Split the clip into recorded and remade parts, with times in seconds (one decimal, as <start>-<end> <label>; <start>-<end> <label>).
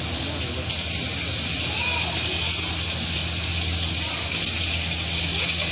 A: 0.0-5.7 recorded